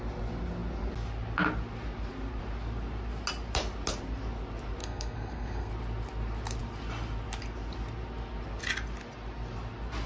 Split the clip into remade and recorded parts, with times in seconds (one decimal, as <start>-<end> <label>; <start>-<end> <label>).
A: 0.0-4.8 recorded; 4.8-5.7 remade; 5.7-10.1 recorded